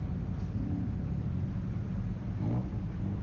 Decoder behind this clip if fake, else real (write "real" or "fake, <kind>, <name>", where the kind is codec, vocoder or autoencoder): real